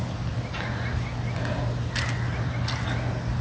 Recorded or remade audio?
recorded